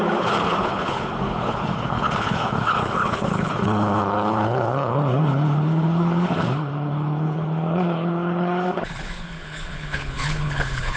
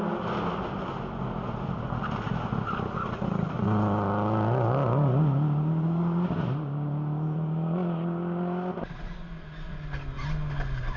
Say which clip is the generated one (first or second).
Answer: first